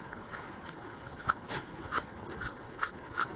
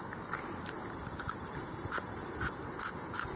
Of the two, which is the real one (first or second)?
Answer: second